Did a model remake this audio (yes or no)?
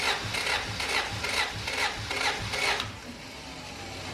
no